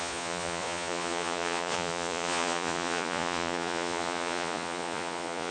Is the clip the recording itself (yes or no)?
no